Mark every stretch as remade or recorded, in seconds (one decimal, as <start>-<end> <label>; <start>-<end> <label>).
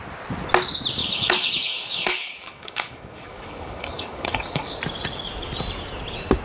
0.0-1.0 recorded; 1.0-4.8 remade; 4.8-6.4 recorded